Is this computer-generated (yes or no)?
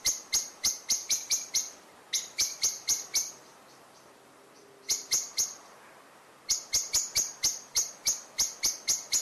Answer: no